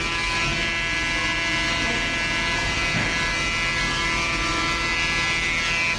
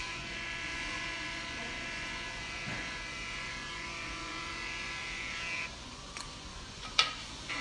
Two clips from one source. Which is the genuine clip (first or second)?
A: first